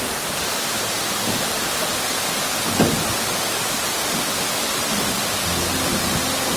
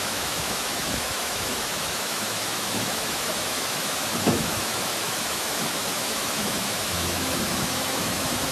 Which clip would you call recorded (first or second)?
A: first